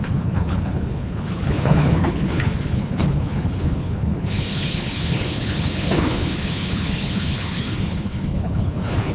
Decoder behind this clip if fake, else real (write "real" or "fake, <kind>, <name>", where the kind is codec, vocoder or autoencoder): fake, codec, HILCodec